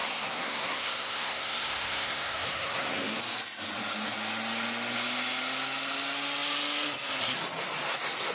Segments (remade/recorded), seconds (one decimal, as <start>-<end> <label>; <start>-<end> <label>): 0.0-3.2 remade; 3.2-8.3 recorded